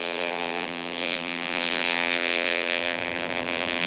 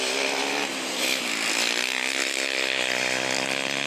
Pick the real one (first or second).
second